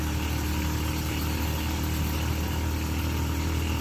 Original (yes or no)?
yes